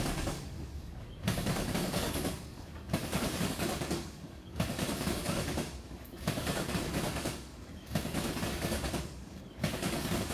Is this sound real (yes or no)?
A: no